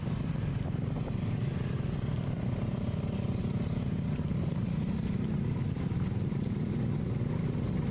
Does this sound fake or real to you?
real